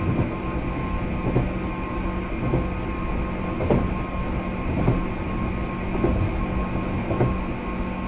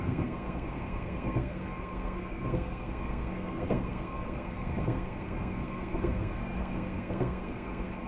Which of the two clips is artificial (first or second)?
second